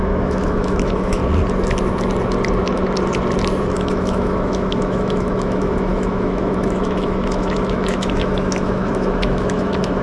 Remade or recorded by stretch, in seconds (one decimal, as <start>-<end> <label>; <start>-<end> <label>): 0.0-1.2 remade; 1.2-3.6 recorded; 3.6-10.0 remade